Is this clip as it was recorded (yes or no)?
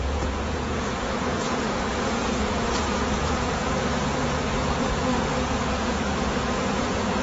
no